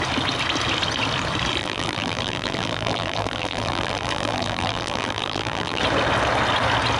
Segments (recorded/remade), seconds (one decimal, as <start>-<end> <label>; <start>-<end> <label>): 0.0-1.6 recorded; 1.6-5.8 remade; 5.8-7.0 recorded